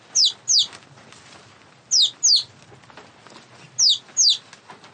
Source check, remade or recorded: recorded